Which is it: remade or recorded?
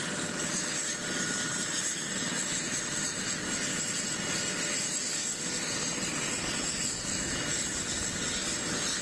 recorded